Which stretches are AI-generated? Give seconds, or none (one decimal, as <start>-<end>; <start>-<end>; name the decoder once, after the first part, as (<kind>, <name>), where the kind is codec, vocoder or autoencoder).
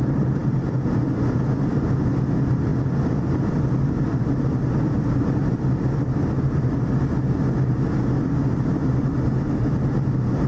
none